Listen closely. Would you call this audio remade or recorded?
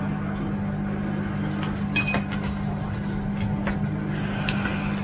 recorded